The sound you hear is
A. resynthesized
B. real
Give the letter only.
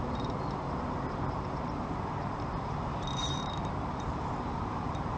A